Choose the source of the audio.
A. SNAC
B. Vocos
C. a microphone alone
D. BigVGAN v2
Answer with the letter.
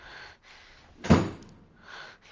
C